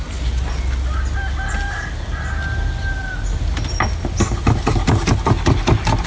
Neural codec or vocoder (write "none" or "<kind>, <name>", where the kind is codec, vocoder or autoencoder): none